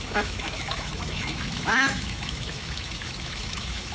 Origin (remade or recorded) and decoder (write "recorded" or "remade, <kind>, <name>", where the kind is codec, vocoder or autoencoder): remade, autoencoder, DAC-VAE